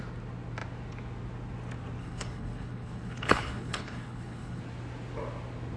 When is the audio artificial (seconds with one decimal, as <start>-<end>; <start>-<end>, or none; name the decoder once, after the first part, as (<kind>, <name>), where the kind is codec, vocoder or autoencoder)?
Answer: 2.0-4.6 (codec, HILCodec)